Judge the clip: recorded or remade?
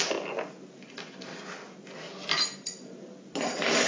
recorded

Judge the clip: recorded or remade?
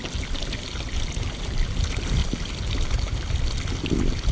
recorded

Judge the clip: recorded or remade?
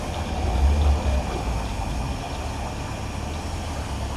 recorded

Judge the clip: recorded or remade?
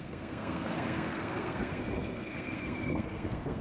remade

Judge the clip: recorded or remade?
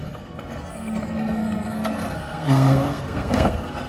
remade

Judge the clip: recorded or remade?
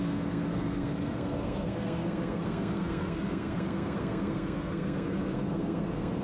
remade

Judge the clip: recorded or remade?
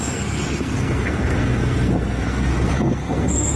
remade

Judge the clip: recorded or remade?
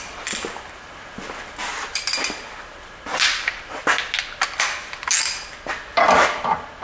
recorded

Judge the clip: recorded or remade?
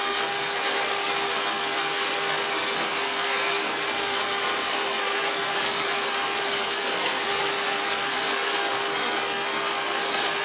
remade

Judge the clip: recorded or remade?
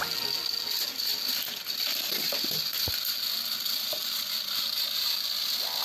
recorded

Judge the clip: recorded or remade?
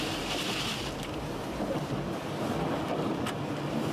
recorded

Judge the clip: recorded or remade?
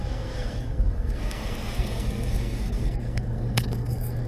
remade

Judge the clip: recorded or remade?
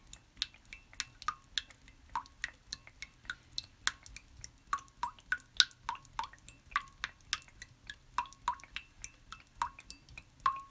recorded